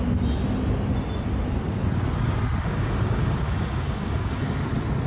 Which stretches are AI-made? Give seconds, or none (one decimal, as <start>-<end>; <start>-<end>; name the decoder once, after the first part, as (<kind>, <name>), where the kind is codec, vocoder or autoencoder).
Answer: 2.6-4.4 (codec, DAC)

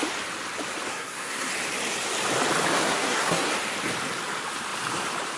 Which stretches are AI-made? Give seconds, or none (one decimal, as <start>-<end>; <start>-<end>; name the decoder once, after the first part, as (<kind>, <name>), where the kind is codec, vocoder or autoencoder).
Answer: 0.9-1.5 (codec, SNAC); 2.7-3.5

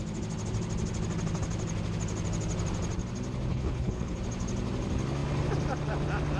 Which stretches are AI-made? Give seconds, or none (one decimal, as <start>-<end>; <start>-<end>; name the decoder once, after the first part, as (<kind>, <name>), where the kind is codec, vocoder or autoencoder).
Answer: 3.5-4.2 (codec, HILCodec)

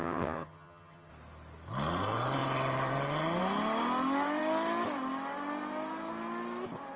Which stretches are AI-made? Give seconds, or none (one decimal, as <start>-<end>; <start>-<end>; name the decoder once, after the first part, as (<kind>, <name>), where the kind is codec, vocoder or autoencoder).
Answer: 0.0-1.1 (vocoder, HiFi-GAN)

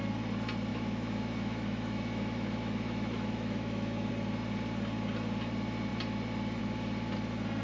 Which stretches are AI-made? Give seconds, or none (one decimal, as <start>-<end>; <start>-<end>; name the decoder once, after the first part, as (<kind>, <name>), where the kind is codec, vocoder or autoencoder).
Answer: 0.7-4.1 (autoencoder, DAC-VAE)

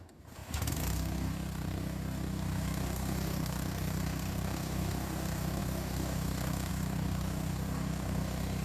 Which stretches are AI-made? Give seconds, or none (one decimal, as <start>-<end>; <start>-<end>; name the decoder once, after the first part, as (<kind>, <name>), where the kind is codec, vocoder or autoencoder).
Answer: 0.0-8.6 (codec, DAC)

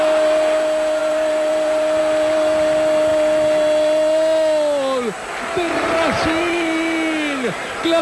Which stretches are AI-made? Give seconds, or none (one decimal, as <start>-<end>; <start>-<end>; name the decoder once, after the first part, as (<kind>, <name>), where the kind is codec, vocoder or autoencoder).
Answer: 1.0-2.0 (vocoder, BigVGAN v2)

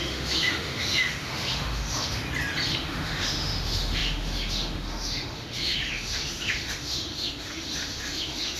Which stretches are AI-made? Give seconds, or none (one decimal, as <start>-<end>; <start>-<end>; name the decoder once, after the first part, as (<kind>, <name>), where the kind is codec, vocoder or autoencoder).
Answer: 0.0-2.2 (autoencoder, DAC-VAE); 2.7-8.6